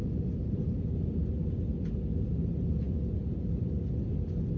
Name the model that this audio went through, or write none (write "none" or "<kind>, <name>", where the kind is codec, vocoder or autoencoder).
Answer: none